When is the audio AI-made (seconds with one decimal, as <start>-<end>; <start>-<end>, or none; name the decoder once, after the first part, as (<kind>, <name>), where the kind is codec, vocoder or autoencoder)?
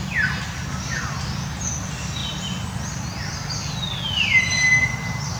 none